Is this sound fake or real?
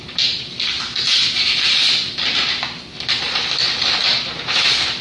real